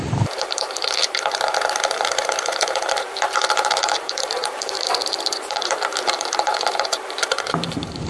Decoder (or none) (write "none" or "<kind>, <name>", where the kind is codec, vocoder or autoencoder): vocoder, BigVGAN v2